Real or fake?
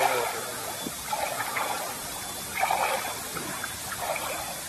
real